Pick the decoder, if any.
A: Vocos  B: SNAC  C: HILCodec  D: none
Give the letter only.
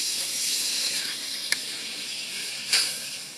B